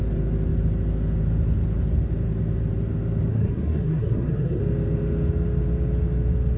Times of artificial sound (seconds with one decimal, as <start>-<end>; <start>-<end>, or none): 3.3-4.6